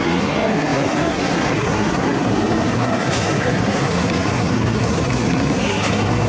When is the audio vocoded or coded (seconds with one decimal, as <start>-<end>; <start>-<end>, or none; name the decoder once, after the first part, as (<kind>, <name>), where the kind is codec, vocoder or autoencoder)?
0.0-6.3 (codec, SNAC)